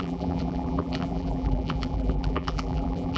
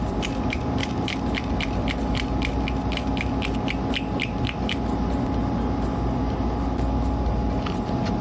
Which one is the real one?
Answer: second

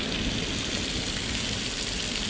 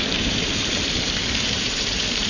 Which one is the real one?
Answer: first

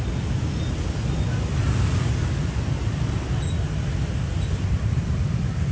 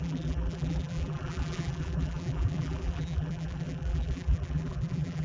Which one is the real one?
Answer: first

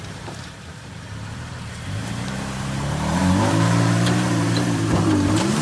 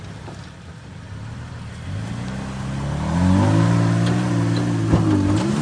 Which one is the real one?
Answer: second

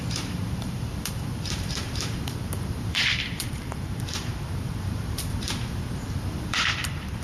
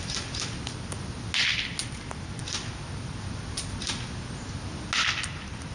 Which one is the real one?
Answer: second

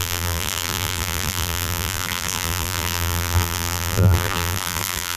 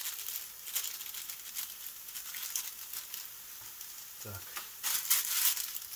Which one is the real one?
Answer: second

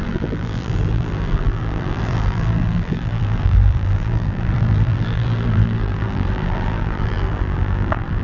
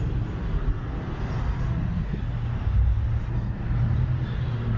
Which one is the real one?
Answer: second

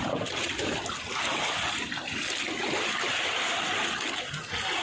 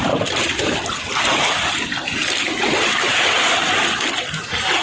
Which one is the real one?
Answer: first